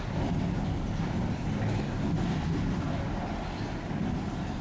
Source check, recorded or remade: recorded